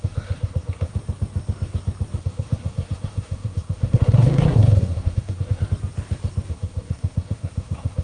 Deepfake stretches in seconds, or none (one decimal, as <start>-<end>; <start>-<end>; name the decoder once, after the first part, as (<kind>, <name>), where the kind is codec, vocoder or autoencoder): 0.0-0.9 (codec, SNAC); 2.2-5.6; 6.5-8.0